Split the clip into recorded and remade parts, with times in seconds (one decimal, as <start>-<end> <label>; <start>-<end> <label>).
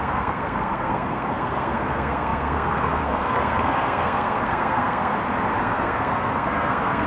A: 0.0-5.1 remade; 5.1-5.6 recorded; 5.6-7.1 remade